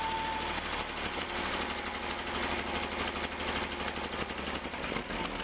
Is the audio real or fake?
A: real